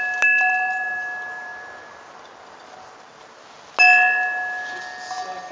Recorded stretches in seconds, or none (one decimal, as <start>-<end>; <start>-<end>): 0.0-5.5